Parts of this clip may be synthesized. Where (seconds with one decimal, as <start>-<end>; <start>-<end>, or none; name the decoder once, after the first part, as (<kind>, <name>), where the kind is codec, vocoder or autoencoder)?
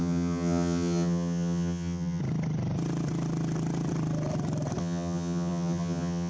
0.0-2.2 (vocoder, HiFi-GAN); 4.8-6.3